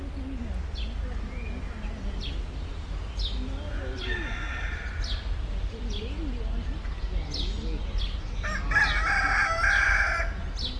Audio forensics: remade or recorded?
recorded